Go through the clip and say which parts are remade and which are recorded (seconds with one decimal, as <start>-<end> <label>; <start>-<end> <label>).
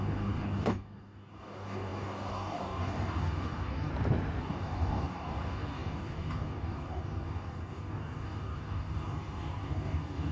0.0-3.9 remade; 3.9-4.4 recorded; 4.4-10.3 remade